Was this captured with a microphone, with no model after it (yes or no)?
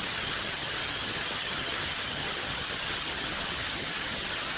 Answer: no